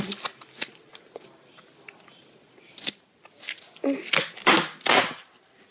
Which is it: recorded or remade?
recorded